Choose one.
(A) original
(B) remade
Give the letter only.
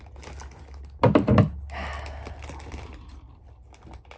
A